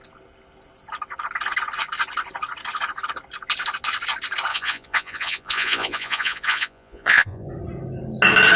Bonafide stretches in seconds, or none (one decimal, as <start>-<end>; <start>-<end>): 0.0-4.5; 7.5-8.6

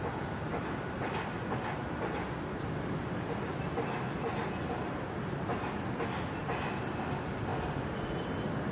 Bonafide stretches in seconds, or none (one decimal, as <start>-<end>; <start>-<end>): 0.0-8.7

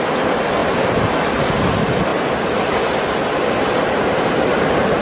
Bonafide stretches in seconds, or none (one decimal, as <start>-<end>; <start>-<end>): 0.0-5.0

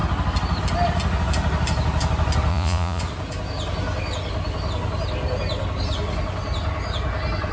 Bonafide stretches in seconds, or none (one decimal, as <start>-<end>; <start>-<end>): 0.0-2.5; 3.0-7.5